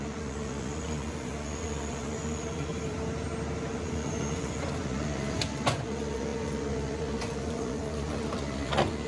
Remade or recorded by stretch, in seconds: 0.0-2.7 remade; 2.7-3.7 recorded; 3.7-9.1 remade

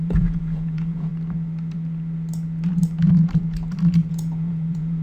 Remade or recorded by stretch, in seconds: 0.0-1.1 remade; 1.1-4.1 recorded; 4.1-5.0 remade

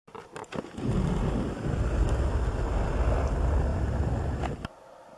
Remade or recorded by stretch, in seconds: 0.0-5.2 recorded

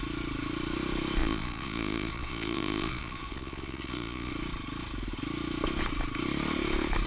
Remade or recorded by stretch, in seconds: 0.0-1.2 recorded; 1.2-4.3 remade; 4.3-7.1 recorded

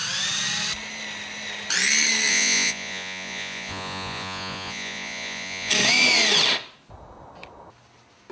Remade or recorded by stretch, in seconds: 0.0-2.3 recorded; 2.3-5.7 remade; 5.7-8.3 recorded